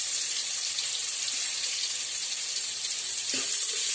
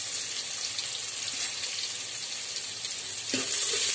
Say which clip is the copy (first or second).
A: first